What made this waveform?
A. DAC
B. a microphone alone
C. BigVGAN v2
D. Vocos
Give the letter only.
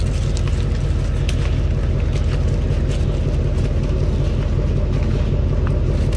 B